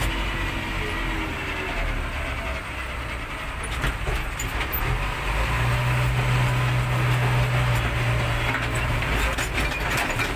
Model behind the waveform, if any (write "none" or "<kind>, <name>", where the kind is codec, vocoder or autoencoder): none